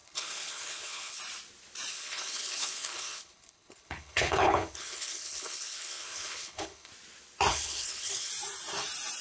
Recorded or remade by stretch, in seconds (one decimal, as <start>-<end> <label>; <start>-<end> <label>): 0.0-1.2 remade; 1.2-1.9 recorded; 1.9-6.9 remade; 6.9-7.5 recorded; 7.5-8.3 remade; 8.3-9.2 recorded